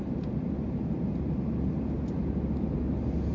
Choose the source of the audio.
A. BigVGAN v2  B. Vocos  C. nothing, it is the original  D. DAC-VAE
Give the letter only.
C